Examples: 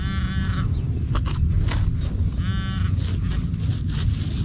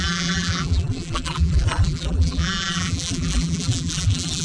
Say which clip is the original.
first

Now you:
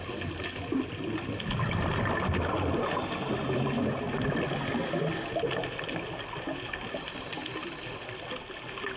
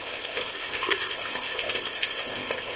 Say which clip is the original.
first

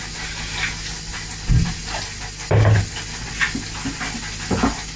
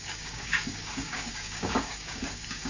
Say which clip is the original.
first